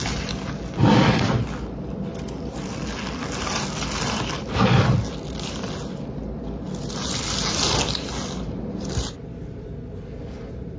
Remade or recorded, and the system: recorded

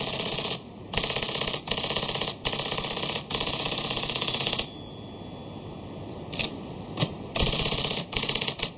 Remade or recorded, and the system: recorded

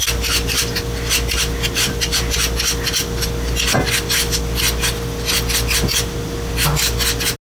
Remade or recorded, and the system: recorded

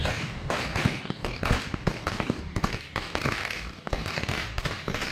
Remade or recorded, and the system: remade, codec, DAC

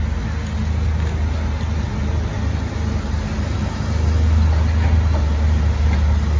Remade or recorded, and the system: recorded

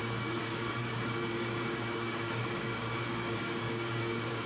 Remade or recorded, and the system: remade, codec, DAC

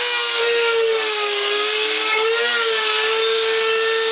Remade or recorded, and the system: remade, codec, DAC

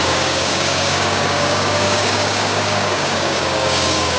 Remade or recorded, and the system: remade, codec, DAC